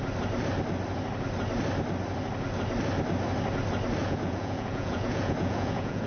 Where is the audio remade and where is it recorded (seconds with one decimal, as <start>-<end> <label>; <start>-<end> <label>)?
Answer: 0.0-4.0 recorded; 4.0-6.1 remade